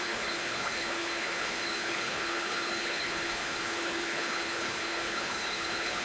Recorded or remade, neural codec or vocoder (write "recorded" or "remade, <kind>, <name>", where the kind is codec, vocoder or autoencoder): remade, codec, HILCodec